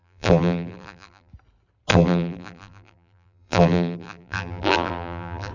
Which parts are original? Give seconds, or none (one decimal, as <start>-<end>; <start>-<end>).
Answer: 1.3-1.9